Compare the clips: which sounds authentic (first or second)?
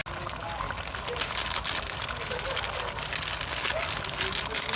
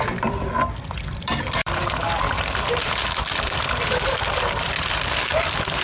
first